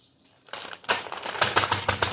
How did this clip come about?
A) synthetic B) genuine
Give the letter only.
A